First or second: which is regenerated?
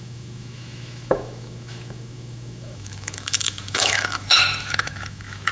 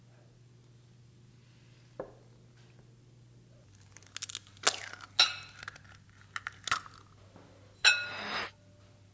first